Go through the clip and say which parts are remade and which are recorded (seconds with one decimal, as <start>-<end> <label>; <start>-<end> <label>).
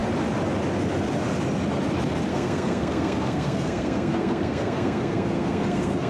0.0-2.3 recorded; 2.3-6.1 remade